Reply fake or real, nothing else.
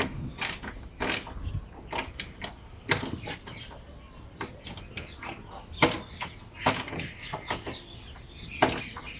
real